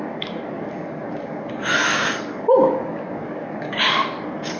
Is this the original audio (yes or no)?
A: no